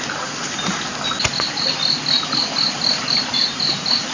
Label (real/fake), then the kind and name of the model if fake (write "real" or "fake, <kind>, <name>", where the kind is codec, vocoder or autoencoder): real